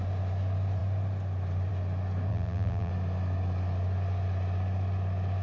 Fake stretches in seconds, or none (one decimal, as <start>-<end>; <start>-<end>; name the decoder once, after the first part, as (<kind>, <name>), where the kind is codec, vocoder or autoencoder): 2.3-2.9 (vocoder, BigVGAN v2)